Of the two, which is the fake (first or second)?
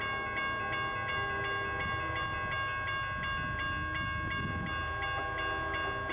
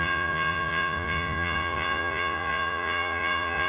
second